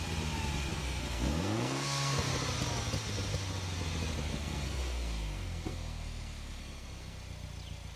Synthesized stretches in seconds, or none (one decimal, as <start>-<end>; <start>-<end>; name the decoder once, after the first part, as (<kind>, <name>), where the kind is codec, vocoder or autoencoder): 0.7-2.3 (codec, SNAC); 4.3-7.2